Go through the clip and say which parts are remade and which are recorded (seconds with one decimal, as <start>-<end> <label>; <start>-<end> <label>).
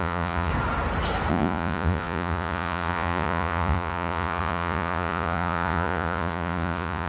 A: 0.0-0.5 remade; 0.5-1.3 recorded; 1.3-7.1 remade